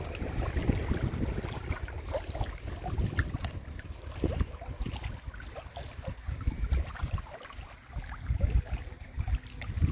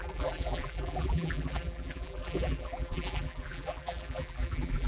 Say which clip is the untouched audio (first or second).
first